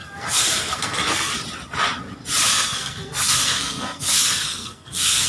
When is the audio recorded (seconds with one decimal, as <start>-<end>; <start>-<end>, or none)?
1.3-2.5